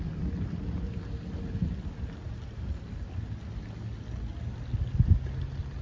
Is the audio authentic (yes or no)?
yes